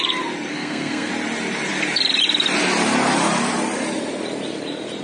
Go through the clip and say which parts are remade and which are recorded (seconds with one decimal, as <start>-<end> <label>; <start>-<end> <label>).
0.0-0.5 recorded; 0.5-1.1 remade; 1.1-5.0 recorded